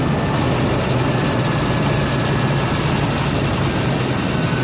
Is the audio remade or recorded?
recorded